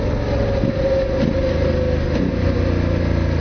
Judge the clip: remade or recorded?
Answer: recorded